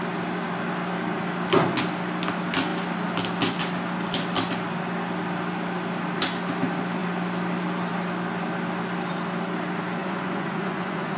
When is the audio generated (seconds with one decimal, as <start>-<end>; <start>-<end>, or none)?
10.0-11.2